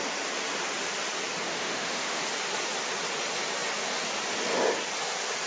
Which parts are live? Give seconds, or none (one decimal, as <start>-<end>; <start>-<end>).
0.0-1.5; 2.2-5.5